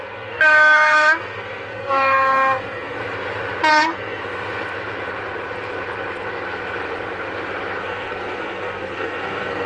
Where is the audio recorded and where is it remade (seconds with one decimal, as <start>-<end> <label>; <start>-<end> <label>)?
0.0-3.0 remade; 3.0-3.7 recorded; 3.7-4.2 remade; 4.2-7.8 recorded; 7.8-9.7 remade